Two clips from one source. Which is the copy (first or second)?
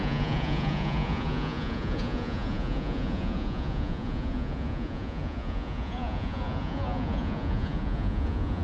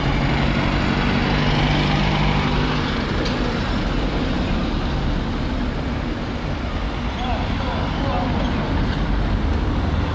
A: first